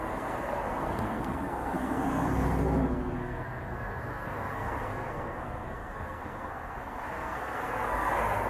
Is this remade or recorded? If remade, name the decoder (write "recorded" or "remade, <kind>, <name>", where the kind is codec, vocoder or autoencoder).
remade, codec, SNAC